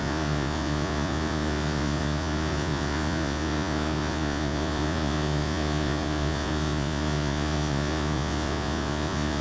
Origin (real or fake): fake